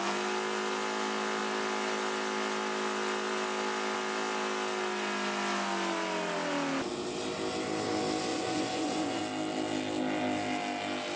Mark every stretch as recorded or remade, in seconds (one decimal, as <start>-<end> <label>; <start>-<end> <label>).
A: 0.0-8.3 recorded; 8.3-9.2 remade; 9.2-11.2 recorded